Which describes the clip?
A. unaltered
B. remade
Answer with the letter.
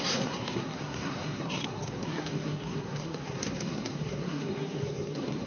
B